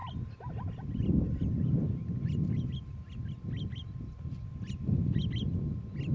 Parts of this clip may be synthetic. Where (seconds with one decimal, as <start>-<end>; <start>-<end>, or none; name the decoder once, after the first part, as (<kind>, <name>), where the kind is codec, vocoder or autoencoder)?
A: none